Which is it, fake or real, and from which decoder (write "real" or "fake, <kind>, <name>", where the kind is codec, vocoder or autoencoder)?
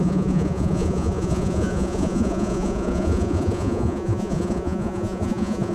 fake, vocoder, Vocos